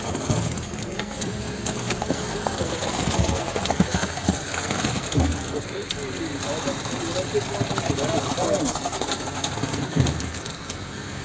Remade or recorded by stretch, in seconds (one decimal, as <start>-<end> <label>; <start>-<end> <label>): 0.0-6.0 remade; 6.0-8.6 recorded; 8.6-11.2 remade